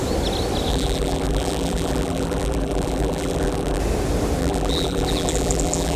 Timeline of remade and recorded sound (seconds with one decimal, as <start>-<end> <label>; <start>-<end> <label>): 0.0-0.7 recorded; 0.7-3.8 remade; 3.8-4.4 recorded; 4.4-6.0 remade